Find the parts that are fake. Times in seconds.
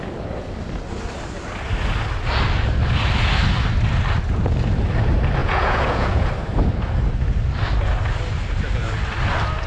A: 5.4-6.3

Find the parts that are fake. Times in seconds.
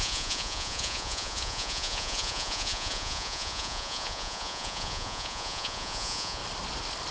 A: 0.0-6.4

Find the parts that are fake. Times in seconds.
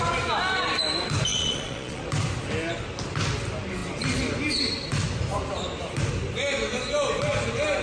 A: 1.3-2.0